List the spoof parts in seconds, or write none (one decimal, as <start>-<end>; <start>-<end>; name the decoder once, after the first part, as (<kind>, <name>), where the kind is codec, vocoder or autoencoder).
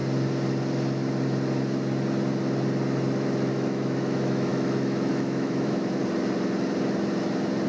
3.5-6.0 (autoencoder, DAC-VAE)